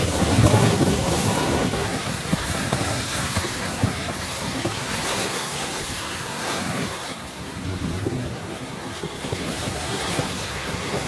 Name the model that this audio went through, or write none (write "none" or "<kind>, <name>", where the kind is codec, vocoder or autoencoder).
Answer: codec, SNAC